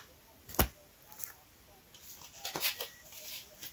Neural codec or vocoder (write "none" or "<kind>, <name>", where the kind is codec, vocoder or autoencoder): none